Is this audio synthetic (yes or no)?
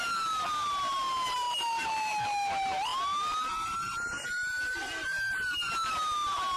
yes